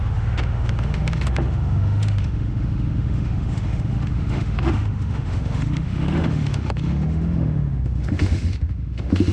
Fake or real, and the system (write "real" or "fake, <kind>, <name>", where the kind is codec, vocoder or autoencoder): fake, autoencoder, DAC-VAE